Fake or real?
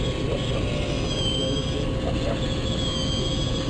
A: real